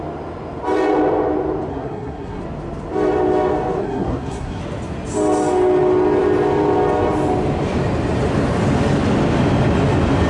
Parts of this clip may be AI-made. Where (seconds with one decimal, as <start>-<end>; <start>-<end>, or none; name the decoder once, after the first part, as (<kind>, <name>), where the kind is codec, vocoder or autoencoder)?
1.7-2.4 (codec, SNAC); 3.8-4.6